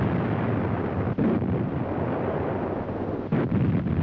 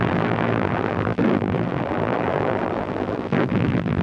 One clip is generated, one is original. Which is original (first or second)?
first